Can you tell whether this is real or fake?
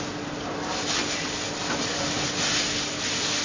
real